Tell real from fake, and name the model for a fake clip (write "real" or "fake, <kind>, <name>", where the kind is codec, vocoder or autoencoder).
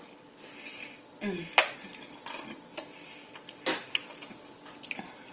real